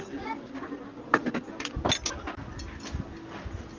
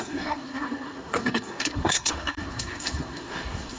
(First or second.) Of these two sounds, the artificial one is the second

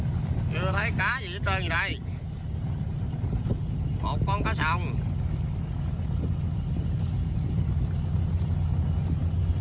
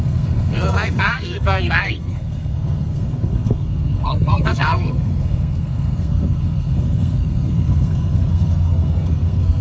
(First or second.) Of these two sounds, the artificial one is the second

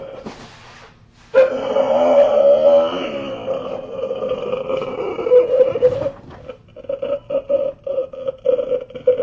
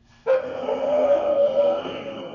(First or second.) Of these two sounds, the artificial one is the second